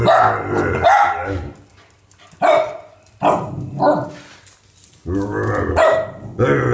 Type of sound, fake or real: real